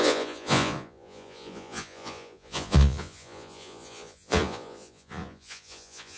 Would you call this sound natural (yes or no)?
no